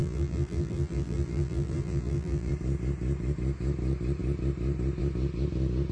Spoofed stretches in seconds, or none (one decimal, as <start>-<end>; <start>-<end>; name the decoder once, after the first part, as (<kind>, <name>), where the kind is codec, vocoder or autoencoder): 0.0-2.5 (vocoder, BigVGAN v2)